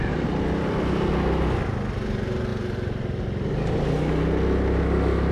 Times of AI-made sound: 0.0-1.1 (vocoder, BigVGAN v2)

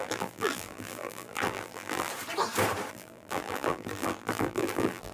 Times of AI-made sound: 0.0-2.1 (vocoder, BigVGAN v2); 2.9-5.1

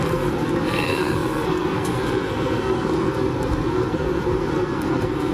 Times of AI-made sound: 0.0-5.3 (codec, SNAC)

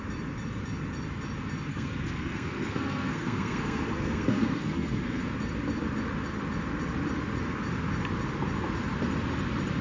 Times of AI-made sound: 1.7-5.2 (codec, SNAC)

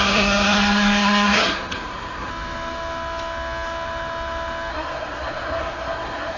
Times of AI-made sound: 0.0-2.3 (codec, SNAC); 4.7-6.4

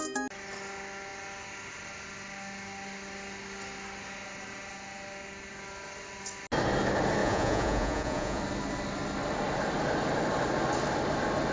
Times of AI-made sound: 7.2-8.4 (vocoder, Vocos)

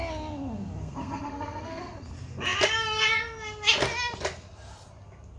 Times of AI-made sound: 0.8-1.8 (codec, SNAC)